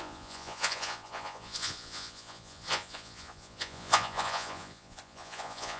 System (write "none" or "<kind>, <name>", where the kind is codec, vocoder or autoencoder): vocoder, Vocos